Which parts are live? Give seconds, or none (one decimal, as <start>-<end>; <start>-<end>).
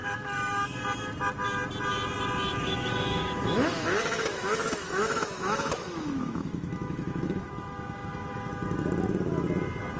0.8-2.5; 7.5-10.0